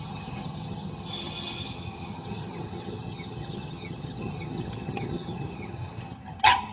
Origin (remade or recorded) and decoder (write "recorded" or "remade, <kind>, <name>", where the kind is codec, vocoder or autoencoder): remade, vocoder, HiFi-GAN